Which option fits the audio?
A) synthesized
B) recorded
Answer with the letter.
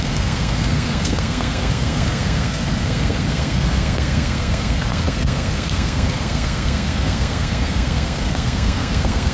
A